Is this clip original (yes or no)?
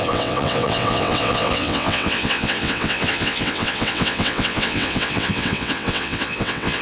no